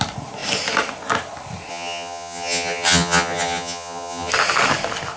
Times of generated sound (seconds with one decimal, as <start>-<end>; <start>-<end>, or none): 1.7-4.3